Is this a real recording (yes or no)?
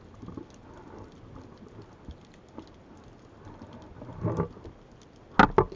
yes